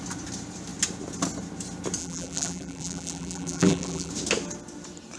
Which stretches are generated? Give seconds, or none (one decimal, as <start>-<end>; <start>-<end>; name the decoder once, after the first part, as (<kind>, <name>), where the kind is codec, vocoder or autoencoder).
2.0-4.1 (vocoder, BigVGAN v2)